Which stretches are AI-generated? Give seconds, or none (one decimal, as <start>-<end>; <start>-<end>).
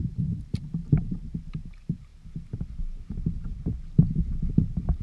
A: 0.0-2.1; 4.5-5.0